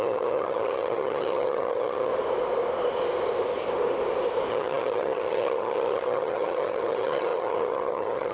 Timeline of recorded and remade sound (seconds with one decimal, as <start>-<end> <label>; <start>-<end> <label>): 0.0-2.1 remade; 2.1-4.5 recorded; 4.5-8.3 remade